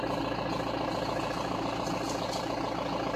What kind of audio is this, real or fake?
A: real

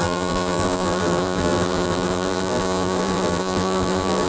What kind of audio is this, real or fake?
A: fake